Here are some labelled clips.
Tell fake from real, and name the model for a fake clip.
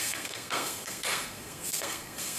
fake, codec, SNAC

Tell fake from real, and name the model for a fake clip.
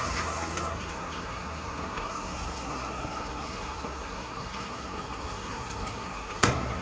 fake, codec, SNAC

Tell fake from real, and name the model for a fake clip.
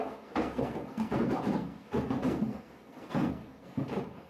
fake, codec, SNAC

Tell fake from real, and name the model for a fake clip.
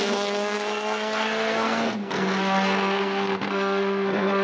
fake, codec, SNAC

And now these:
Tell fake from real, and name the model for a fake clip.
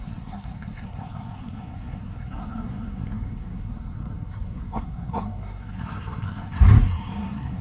fake, codec, SNAC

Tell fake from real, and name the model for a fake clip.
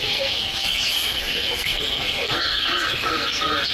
fake, codec, SNAC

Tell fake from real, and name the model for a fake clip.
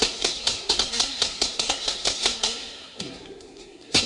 fake, codec, SNAC